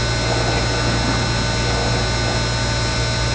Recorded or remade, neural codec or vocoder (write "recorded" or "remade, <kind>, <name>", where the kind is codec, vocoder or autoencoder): recorded